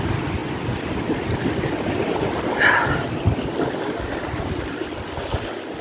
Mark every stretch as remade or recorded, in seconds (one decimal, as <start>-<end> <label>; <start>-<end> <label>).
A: 0.0-5.8 recorded